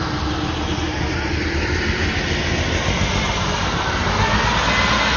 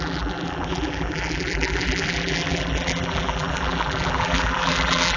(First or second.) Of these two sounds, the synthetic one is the second